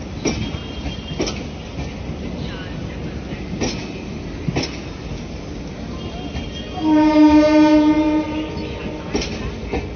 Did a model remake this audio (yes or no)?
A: no